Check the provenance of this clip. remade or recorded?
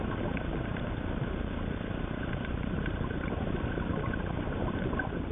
recorded